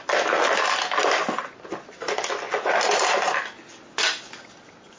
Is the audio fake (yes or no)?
no